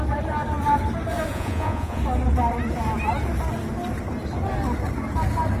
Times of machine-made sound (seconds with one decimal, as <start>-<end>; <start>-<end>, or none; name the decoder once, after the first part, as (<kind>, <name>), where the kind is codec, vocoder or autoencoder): 1.3-2.0 (vocoder, Vocos)